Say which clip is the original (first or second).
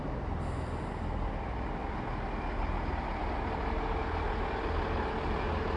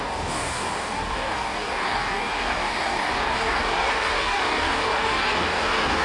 first